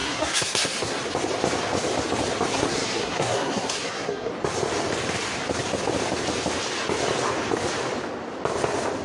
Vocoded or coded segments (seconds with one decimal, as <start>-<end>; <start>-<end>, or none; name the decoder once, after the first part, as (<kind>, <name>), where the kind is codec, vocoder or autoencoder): 0.0-1.0 (codec, SNAC); 2.5-4.3